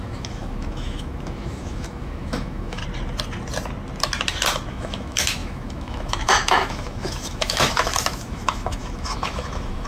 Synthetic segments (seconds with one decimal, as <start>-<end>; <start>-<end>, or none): 0.0-2.8; 4.7-9.9